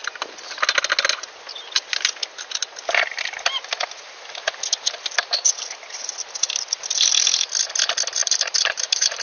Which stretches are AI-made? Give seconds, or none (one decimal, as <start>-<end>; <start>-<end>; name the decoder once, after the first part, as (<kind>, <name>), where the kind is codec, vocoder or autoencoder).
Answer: 8.2-9.2 (vocoder, BigVGAN v2)